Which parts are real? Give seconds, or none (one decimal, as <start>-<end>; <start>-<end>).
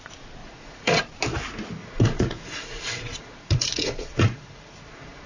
0.0-0.4; 1.0-1.8